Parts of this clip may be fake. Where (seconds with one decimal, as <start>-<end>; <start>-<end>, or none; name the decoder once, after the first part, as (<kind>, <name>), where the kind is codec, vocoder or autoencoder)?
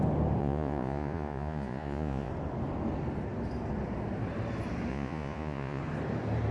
0.4-2.3 (vocoder, Vocos); 4.9-5.8